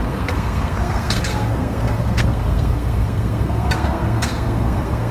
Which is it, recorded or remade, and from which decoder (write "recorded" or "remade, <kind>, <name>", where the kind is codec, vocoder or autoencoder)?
remade, codec, SNAC